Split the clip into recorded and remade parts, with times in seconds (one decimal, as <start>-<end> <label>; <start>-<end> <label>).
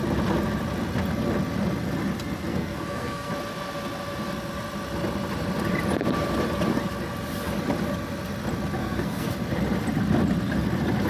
0.0-2.5 recorded; 2.5-3.3 remade; 3.3-8.8 recorded; 8.8-9.3 remade; 9.3-11.1 recorded